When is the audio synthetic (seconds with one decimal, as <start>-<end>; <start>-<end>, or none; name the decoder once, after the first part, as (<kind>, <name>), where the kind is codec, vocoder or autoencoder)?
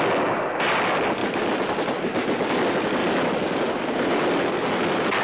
none